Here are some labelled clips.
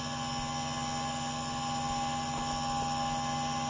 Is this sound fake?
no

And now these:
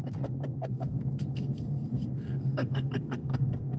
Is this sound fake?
yes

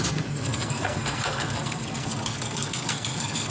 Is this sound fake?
yes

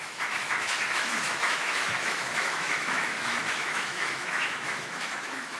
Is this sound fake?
yes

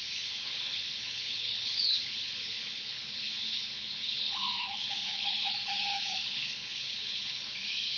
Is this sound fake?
yes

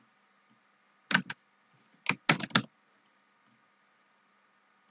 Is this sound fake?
no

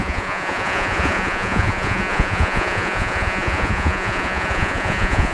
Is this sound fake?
yes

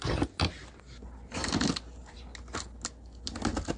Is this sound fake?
no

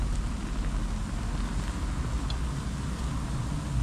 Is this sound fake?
no